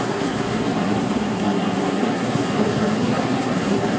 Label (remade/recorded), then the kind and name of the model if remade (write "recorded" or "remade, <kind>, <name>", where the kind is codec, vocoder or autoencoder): remade, codec, SNAC